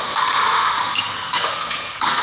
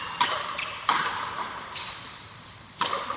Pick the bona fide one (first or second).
second